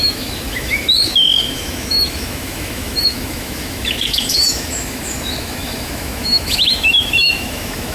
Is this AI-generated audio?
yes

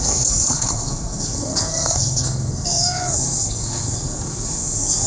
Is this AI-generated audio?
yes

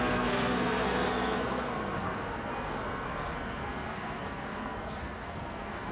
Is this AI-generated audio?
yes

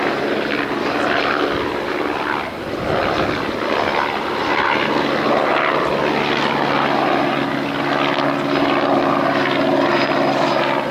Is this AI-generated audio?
no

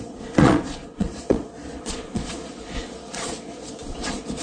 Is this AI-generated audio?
yes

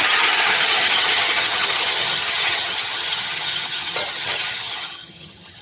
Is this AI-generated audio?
yes